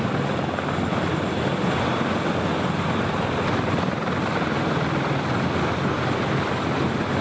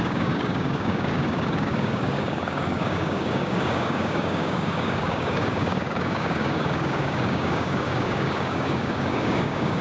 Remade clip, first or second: second